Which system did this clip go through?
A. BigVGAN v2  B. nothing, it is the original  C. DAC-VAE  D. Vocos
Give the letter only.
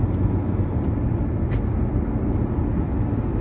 B